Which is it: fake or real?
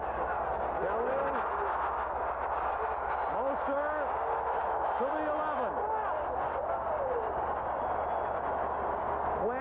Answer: real